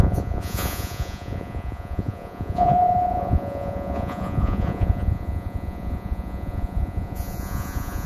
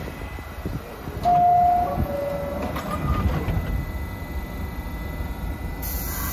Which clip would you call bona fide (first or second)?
second